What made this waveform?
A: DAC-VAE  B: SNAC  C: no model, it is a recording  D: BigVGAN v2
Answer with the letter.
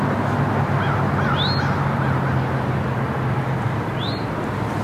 C